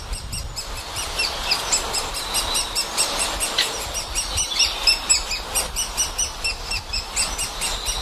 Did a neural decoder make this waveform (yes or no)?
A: no